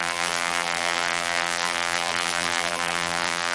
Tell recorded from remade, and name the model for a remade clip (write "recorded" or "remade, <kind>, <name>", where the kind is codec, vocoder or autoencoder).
remade, vocoder, BigVGAN v2